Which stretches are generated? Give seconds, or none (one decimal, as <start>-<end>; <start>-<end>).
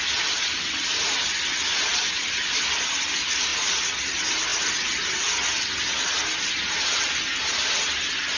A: none